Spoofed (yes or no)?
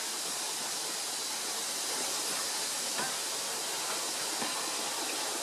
no